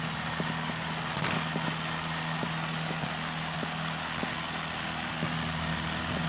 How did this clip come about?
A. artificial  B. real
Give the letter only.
B